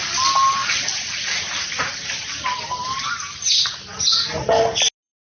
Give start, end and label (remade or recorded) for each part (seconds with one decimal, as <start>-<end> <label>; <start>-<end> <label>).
0.0-5.2 recorded